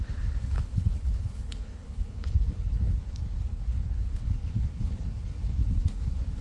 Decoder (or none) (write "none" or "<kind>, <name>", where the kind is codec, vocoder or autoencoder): codec, HILCodec